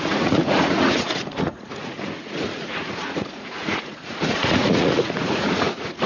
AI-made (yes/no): yes